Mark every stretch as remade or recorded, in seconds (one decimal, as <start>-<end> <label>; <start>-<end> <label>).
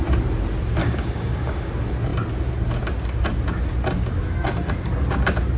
0.0-0.8 recorded; 0.8-1.7 remade; 1.7-5.6 recorded